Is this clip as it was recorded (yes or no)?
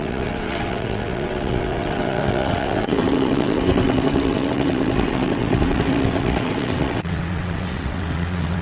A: no